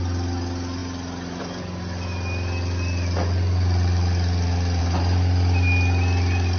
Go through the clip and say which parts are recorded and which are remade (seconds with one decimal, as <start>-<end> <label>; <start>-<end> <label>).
0.0-6.6 recorded